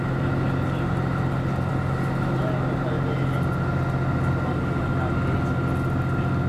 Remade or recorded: recorded